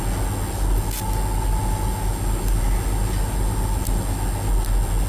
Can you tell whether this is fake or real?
real